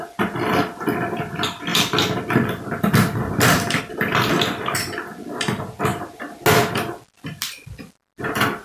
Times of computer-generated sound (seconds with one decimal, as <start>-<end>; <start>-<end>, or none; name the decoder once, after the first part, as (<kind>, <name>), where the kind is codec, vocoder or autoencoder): none